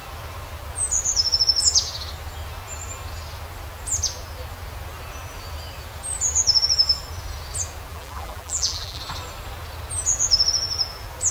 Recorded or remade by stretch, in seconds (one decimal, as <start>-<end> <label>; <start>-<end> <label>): 0.0-7.9 recorded; 7.9-9.0 remade; 9.0-11.3 recorded